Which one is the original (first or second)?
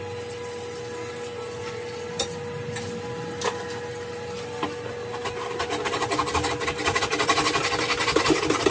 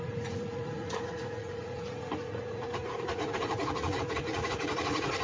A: first